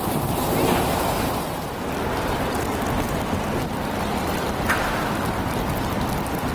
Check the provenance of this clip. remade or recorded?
recorded